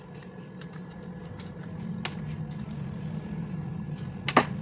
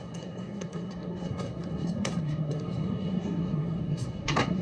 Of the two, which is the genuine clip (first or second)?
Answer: first